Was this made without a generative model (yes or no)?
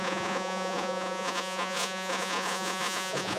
no